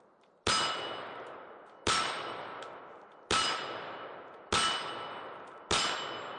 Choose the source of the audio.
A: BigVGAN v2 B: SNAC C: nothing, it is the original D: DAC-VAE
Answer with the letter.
C